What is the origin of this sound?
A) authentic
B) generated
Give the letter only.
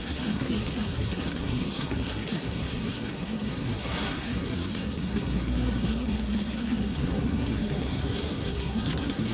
B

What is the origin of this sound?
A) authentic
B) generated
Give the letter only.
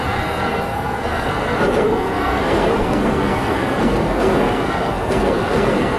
B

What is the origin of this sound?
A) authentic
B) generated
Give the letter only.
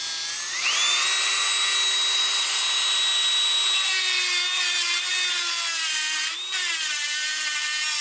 A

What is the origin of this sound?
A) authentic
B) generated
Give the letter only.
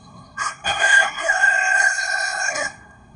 B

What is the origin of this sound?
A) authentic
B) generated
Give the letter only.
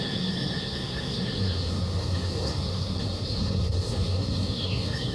B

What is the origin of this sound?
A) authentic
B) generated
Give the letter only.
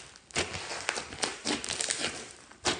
A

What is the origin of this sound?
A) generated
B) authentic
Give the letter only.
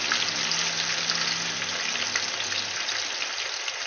B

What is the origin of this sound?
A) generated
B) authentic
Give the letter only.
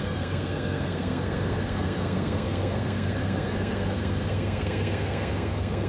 A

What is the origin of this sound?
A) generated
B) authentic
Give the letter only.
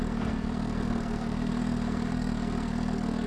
A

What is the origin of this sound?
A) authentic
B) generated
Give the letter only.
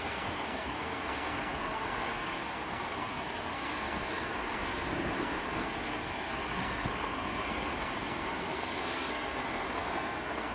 B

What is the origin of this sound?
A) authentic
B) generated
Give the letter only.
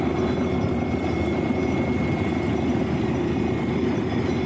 A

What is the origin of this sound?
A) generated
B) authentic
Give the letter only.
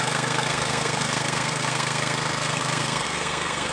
A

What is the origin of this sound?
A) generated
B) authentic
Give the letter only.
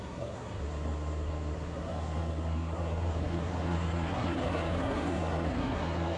A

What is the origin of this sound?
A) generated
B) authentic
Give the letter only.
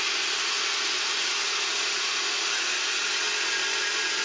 B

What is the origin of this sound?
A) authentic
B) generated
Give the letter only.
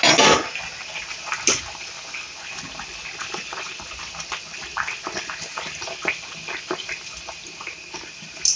A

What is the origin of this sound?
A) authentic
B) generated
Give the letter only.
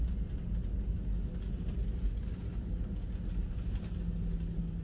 A